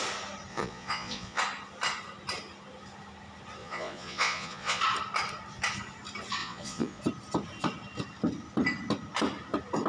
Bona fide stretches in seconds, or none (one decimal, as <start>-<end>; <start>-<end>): 0.0-0.5; 1.4-3.6; 4.8-6.4; 7.0-9.9